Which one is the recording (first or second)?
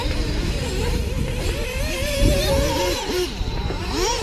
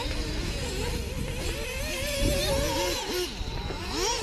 second